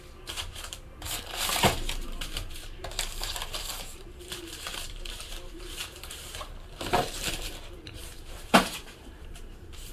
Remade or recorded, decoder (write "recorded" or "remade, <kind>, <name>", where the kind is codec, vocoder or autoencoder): remade, vocoder, BigVGAN v2